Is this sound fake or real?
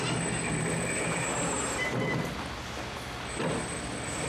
real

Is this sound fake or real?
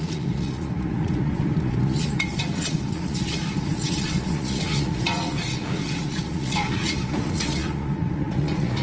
fake